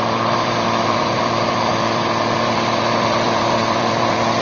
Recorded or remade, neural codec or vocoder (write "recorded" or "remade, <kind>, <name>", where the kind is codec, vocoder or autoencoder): remade, vocoder, BigVGAN v2